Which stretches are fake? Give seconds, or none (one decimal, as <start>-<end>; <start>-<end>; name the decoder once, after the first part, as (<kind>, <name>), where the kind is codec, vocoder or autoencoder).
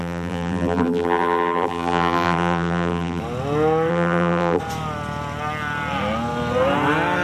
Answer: 0.0-3.2 (vocoder, BigVGAN v2); 3.9-4.6